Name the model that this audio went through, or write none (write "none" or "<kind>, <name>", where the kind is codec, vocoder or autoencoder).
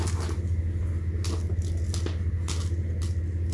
none